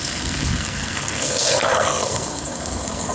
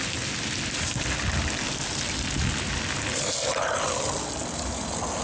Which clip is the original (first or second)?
second